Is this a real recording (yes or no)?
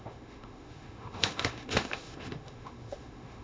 no